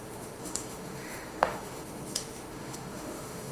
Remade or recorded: remade